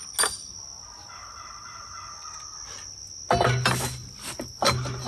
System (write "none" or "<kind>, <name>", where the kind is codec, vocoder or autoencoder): none